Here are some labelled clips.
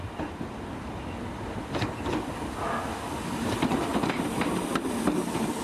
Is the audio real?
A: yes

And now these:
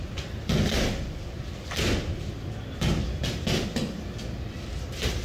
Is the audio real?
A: yes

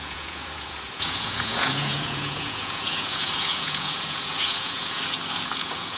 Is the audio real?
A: no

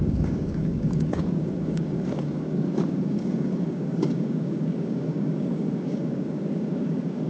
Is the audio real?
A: no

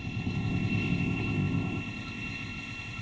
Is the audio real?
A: no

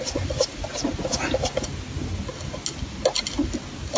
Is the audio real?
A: yes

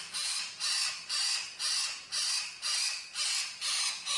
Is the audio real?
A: yes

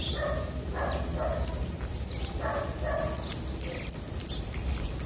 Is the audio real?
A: yes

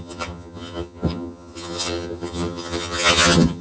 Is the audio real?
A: no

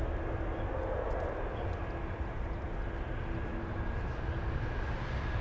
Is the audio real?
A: yes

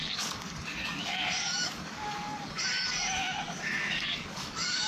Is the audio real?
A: no